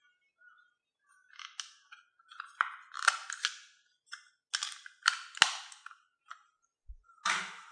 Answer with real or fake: real